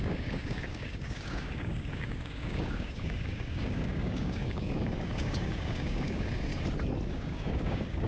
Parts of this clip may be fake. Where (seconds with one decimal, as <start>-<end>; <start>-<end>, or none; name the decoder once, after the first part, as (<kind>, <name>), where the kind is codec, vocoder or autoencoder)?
0.0-6.5 (codec, DAC); 7.1-8.1